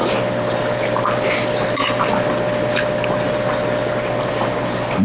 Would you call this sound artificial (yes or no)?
no